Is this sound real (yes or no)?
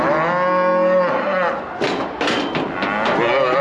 yes